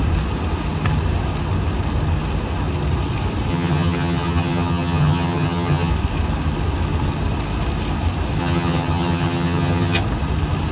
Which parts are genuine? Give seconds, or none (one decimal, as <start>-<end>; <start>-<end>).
0.0-3.5; 5.9-8.4; 10.0-10.7